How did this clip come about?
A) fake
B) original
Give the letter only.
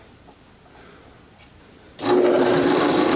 A